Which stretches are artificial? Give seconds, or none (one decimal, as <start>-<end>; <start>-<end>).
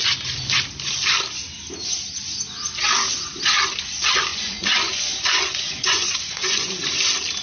4.3-6.7